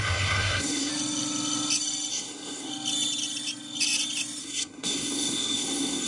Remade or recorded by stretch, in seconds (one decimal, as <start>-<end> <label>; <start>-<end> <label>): 0.0-0.9 remade; 0.9-2.1 recorded; 2.1-2.7 remade; 2.7-4.4 recorded; 4.4-6.1 remade